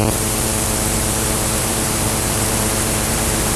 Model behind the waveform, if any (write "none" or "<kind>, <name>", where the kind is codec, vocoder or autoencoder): vocoder, BigVGAN v2